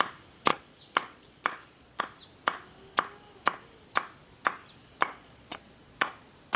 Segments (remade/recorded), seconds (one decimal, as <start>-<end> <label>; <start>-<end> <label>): 0.0-0.5 recorded; 0.5-2.0 remade; 2.0-4.8 recorded; 4.8-6.1 remade; 6.1-6.6 recorded